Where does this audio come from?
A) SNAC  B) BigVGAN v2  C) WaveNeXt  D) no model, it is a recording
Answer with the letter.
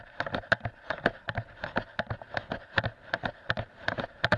D